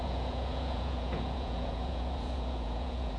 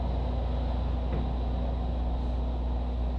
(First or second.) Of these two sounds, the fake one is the first